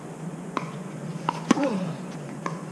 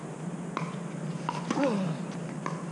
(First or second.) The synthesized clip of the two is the first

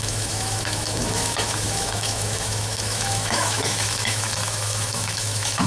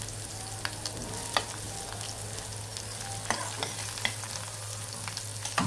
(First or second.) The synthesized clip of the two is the first